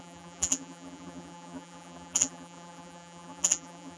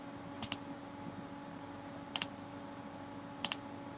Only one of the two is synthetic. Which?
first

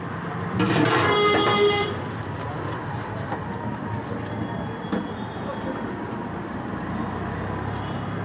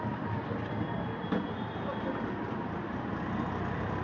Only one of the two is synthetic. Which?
second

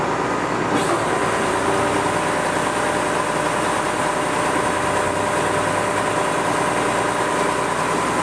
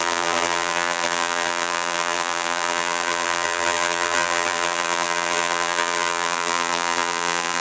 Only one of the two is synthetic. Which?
second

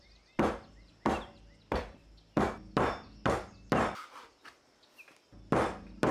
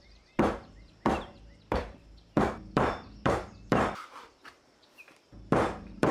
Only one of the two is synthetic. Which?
second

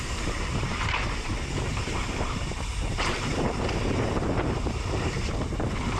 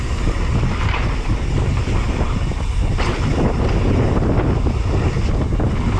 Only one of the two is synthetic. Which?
first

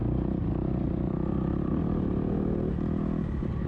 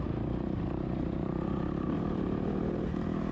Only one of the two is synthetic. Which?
second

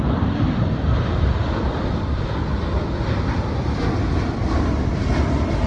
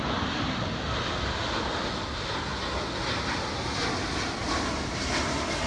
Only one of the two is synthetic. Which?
first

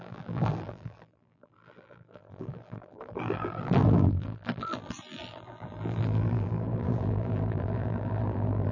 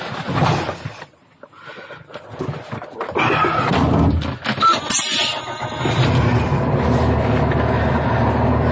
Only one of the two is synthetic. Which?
first